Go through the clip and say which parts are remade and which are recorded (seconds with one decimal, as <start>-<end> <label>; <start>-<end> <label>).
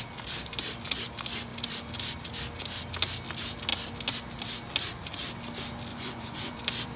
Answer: 0.0-5.9 recorded; 5.9-6.6 remade; 6.6-7.0 recorded